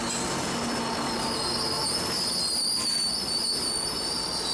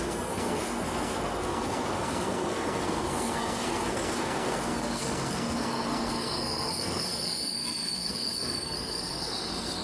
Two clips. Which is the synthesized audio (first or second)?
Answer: second